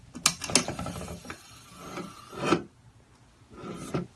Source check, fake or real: real